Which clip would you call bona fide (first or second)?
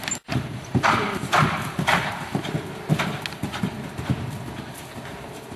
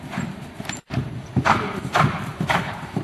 first